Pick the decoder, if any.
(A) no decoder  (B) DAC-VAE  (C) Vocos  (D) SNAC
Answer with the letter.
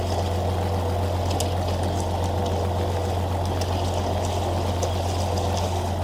A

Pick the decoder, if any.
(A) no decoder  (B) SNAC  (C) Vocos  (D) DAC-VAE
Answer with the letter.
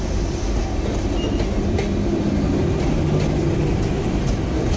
A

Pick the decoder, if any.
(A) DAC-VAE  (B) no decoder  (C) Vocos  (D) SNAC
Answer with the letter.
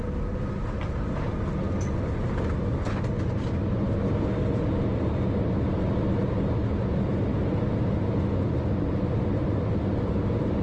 B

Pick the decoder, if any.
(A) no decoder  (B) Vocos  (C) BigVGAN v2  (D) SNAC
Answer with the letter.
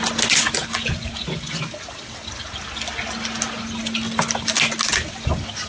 A